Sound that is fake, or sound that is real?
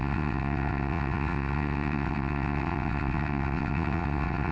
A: fake